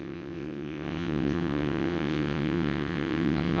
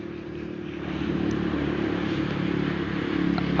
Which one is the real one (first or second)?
second